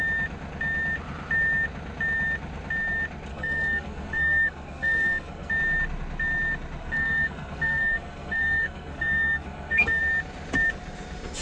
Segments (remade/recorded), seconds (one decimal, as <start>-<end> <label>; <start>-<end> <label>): 0.0-3.3 recorded; 3.3-5.5 remade; 5.5-6.8 recorded; 6.8-10.0 remade; 10.0-11.4 recorded